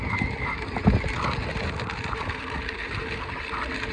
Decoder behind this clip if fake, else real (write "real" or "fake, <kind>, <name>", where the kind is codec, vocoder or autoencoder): real